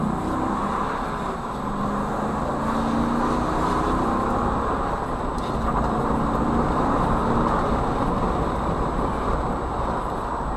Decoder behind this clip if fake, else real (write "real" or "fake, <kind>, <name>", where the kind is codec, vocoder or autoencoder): real